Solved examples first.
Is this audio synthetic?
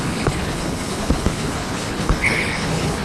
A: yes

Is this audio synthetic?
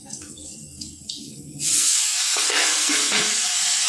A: yes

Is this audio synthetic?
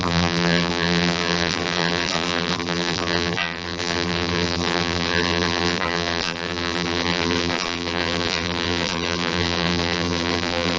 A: yes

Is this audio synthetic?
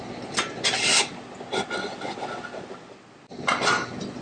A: no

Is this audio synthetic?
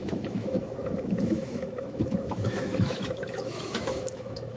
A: yes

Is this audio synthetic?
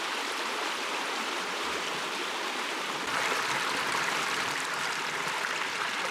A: yes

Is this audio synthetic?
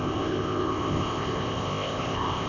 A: yes